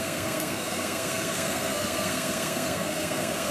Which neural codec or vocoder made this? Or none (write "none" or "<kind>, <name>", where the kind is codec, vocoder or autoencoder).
codec, SNAC